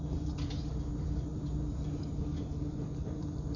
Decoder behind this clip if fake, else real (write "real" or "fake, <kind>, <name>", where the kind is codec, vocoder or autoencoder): fake, vocoder, BigVGAN v2